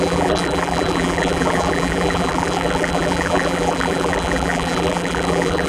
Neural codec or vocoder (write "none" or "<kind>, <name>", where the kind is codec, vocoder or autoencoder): vocoder, BigVGAN v2